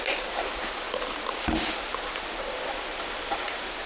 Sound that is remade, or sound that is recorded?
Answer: recorded